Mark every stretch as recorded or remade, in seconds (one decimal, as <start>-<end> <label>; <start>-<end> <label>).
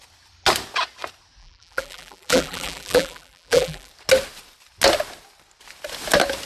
0.0-1.4 recorded; 1.4-3.9 remade; 3.9-6.5 recorded